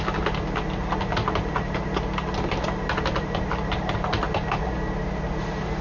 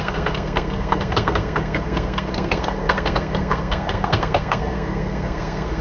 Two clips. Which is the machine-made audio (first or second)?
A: second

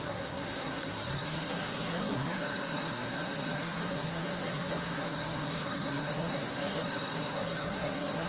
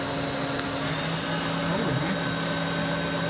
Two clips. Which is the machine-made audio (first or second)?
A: first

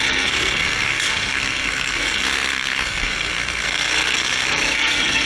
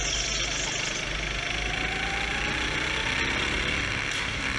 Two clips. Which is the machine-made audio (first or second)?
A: first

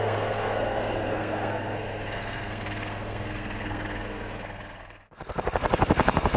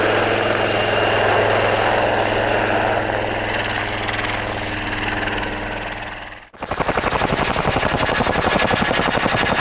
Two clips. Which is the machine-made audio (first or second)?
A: first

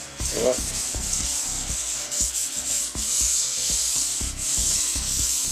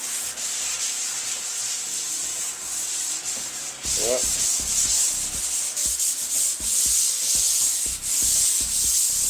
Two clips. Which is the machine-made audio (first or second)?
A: first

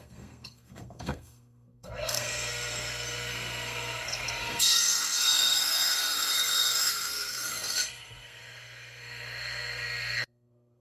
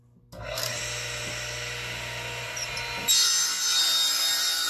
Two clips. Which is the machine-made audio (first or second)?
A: first